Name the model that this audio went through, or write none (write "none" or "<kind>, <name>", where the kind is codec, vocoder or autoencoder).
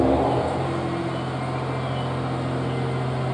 none